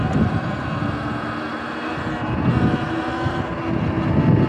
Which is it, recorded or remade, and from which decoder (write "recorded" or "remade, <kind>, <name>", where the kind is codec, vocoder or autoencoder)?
recorded